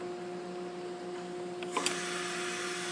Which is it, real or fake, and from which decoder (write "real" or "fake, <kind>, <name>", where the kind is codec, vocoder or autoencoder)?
real